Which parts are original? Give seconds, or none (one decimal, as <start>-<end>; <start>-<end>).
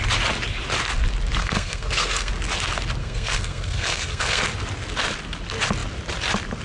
0.0-1.4; 2.3-3.0; 4.4-6.6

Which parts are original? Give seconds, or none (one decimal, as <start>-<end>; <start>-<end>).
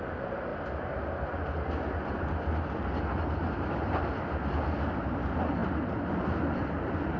0.0-7.2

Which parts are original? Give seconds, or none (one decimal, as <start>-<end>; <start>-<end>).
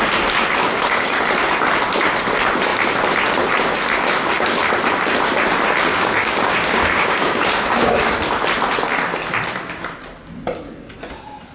0.0-0.6; 1.2-5.9; 8.1-11.5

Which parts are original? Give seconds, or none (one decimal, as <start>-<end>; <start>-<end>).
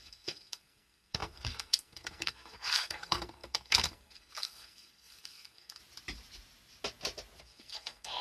5.8-7.4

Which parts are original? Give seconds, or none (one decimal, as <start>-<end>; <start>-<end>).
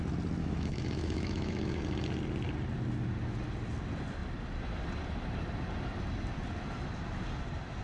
0.0-0.4; 1.8-7.8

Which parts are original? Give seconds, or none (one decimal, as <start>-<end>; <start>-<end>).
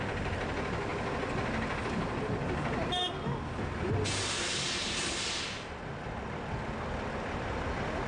0.0-8.1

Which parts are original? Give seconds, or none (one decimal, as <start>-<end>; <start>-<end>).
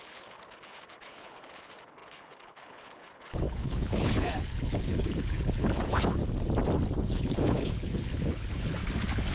6.2-7.0; 8.8-9.3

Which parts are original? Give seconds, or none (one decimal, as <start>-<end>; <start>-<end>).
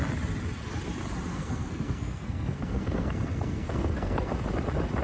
0.0-1.3; 4.3-5.0